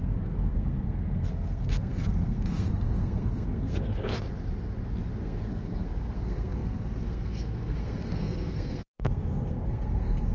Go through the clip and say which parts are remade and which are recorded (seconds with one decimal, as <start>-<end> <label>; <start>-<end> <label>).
0.0-4.1 remade; 4.1-5.2 recorded; 5.2-10.3 remade